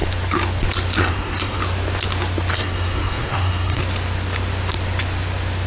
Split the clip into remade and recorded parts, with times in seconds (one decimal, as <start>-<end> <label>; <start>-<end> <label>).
0.0-1.0 recorded; 1.0-1.6 remade; 1.6-2.5 recorded; 2.5-3.8 remade; 3.8-5.7 recorded